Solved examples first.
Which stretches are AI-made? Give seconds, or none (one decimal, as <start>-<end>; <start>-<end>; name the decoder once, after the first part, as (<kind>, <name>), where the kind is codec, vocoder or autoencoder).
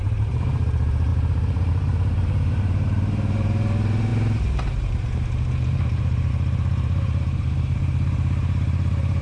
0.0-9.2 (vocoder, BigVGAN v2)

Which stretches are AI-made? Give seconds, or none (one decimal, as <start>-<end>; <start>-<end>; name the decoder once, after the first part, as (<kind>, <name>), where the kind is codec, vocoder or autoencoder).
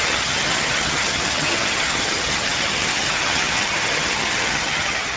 0.0-5.2 (vocoder, HiFi-GAN)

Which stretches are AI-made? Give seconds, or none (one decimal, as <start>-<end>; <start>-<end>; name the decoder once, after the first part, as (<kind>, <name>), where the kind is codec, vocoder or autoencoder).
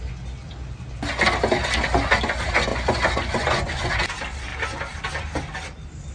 2.7-3.9 (vocoder, Vocos)